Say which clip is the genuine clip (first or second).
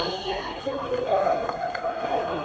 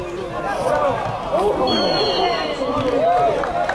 second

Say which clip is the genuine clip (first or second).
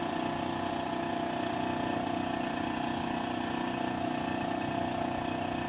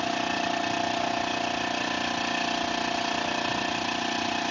second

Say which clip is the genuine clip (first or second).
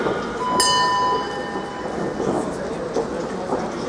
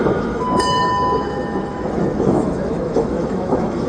first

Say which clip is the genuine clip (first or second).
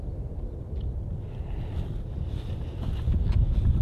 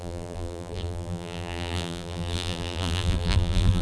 first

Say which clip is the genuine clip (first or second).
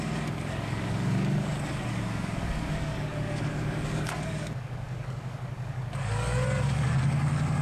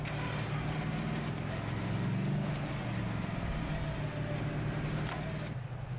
second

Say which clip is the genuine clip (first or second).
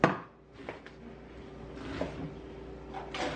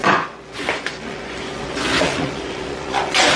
first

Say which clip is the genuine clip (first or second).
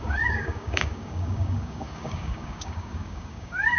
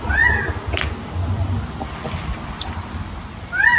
second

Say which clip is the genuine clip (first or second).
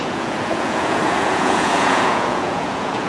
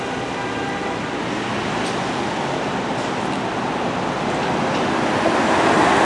second